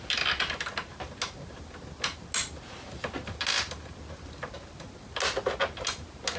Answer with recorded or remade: recorded